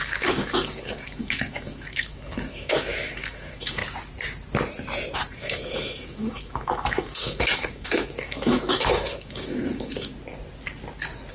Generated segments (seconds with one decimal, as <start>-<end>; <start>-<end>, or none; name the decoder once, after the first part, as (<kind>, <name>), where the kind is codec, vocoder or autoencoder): 0.0-3.8 (autoencoder, DAC-VAE); 5.3-10.1